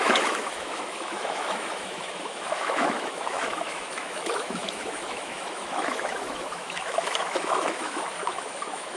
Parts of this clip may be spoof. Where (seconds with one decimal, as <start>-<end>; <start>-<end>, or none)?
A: 0.0-9.0